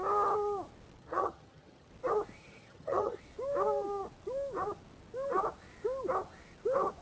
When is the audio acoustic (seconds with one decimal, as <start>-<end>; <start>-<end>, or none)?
0.0-1.0; 1.9-2.4; 3.2-7.0